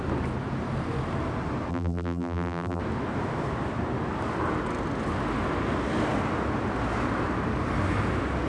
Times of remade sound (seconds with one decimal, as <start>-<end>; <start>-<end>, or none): 1.7-2.8